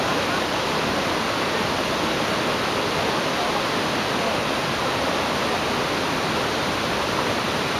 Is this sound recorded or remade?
recorded